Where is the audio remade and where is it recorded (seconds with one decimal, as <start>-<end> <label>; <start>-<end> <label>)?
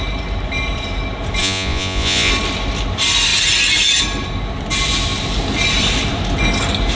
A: 0.0-1.4 recorded; 1.4-2.3 remade; 2.3-7.0 recorded